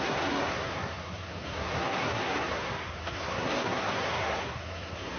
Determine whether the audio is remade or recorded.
remade